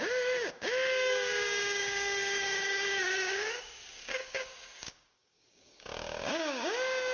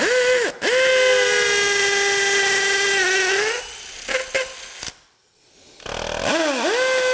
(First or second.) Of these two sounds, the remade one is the first